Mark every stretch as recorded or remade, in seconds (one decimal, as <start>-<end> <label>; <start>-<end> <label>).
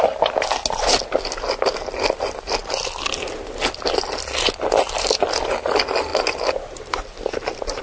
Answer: 0.0-7.8 recorded